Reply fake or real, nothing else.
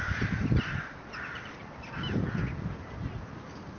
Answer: fake